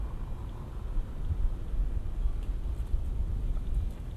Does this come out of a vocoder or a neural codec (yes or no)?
no